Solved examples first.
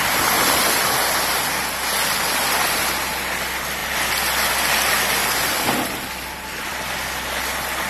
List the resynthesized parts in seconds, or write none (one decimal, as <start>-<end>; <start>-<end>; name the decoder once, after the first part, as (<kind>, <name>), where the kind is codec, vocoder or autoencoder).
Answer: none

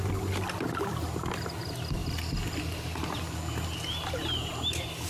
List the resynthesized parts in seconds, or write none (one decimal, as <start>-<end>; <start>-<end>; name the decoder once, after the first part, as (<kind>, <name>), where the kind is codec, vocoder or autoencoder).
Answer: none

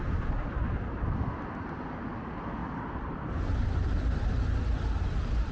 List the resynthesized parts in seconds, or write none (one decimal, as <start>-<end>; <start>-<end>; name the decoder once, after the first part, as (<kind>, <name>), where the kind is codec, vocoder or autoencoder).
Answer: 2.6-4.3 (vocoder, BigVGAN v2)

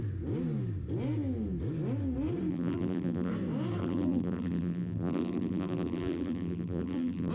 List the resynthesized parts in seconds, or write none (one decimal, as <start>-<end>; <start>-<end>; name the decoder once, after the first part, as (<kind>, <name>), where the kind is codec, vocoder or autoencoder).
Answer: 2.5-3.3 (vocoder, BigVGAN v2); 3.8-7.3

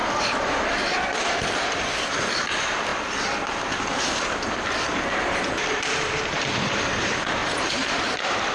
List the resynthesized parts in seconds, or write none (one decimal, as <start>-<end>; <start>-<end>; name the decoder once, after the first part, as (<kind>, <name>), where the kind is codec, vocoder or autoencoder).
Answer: 0.0-2.9 (vocoder, BigVGAN v2); 5.4-8.5

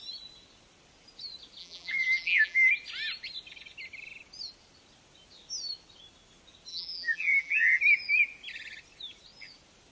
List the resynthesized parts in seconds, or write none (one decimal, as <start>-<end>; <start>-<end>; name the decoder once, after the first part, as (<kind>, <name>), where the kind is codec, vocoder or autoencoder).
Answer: 1.6-2.7 (vocoder, BigVGAN v2); 6.7-7.8

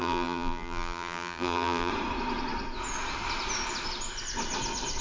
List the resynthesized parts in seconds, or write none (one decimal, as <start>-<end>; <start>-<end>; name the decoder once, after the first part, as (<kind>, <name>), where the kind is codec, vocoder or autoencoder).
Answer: 0.0-1.9 (vocoder, BigVGAN v2)

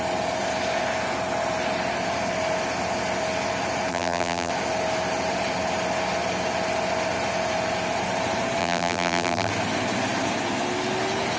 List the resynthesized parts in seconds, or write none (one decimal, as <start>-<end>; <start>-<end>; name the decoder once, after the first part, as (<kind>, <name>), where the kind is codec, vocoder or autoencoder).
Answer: 3.9-4.5 (vocoder, BigVGAN v2); 8.6-9.5